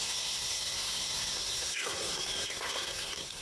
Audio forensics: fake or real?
fake